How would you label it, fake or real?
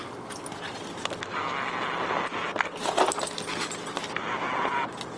real